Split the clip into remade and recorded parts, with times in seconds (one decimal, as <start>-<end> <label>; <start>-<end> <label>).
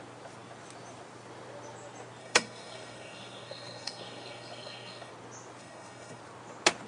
0.0-2.2 recorded; 2.2-5.1 remade; 5.1-5.6 recorded; 5.6-6.2 remade; 6.2-6.9 recorded